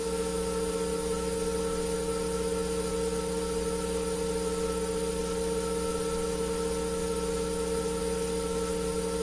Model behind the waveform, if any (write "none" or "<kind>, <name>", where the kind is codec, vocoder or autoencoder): none